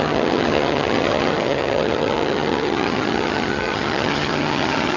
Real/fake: fake